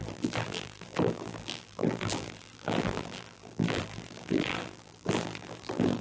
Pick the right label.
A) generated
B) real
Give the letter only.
A